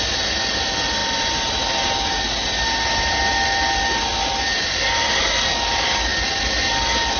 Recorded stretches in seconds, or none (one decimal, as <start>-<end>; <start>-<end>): 0.0-7.2